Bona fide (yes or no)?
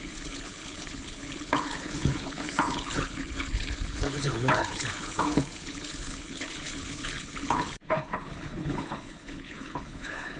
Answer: no